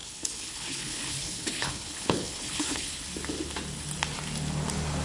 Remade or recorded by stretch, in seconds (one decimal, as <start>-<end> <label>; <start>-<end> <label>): 0.0-3.0 remade; 3.0-5.0 recorded